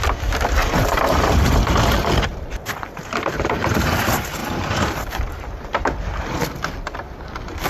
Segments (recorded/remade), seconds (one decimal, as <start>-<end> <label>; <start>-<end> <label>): 0.0-0.6 recorded; 0.6-1.8 remade; 1.8-2.3 recorded; 2.3-3.7 remade; 3.7-4.4 recorded; 4.4-6.3 remade; 6.3-7.7 recorded